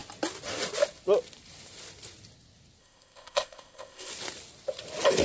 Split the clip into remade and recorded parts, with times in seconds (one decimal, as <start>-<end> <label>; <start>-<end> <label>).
0.0-2.8 recorded; 2.8-4.1 remade; 4.1-5.2 recorded